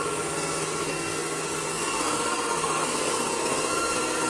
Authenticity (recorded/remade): remade